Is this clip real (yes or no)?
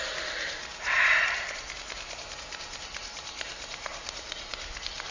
yes